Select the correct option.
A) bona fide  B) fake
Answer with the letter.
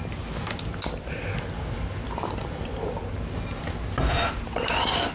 A